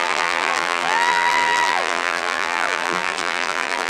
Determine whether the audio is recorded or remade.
remade